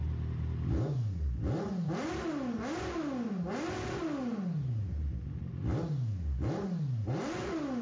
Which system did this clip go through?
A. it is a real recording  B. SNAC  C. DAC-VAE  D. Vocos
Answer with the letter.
A